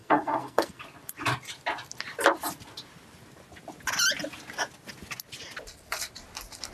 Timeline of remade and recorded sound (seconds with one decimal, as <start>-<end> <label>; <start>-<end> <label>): 0.0-0.8 remade; 0.8-6.7 recorded

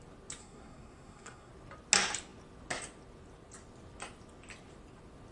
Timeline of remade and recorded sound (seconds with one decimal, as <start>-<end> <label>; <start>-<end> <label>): 0.0-0.4 recorded; 0.4-1.5 remade; 1.5-5.3 recorded

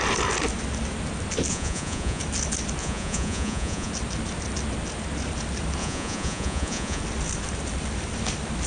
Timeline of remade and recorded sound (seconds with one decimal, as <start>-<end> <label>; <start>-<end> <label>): 0.0-1.5 recorded; 1.5-2.2 remade; 2.2-2.8 recorded; 2.8-3.9 remade; 3.9-5.8 recorded; 5.8-7.0 remade; 7.0-8.7 recorded

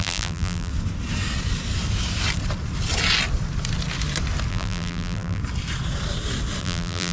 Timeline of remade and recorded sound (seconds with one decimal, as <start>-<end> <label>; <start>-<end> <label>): 0.0-0.7 remade; 0.7-4.5 recorded; 4.5-5.4 remade; 5.4-6.6 recorded; 6.6-7.1 remade

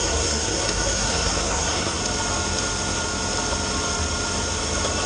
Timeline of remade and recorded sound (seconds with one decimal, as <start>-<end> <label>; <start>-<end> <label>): 0.0-2.0 remade; 2.0-5.1 recorded